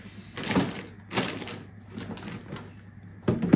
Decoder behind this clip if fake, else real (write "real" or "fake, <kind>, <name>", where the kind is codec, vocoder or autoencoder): real